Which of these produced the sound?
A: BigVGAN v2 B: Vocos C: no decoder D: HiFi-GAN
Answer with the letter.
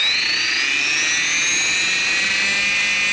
C